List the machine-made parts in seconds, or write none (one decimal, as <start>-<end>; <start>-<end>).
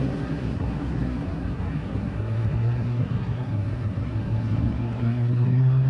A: 0.0-5.9